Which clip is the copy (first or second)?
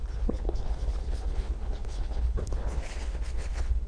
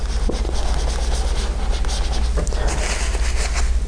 first